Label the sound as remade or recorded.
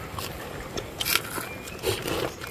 recorded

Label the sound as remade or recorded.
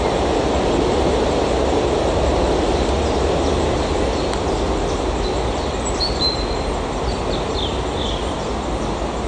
recorded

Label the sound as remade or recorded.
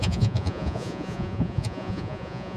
remade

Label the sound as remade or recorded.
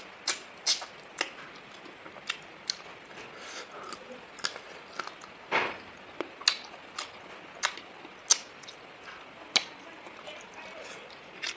recorded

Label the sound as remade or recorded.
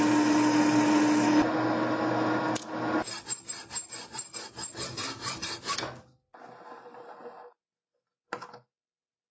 recorded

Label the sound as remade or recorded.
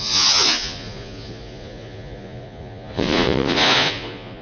remade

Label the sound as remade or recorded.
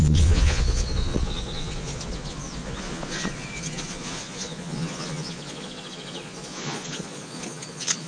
remade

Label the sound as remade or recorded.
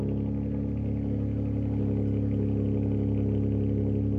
recorded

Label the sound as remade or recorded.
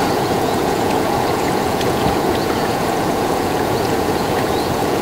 remade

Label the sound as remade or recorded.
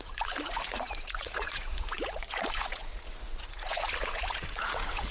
remade